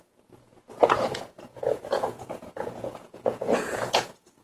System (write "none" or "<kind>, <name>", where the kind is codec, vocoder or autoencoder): vocoder, Vocos